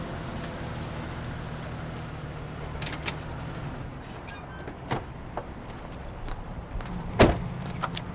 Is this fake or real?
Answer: real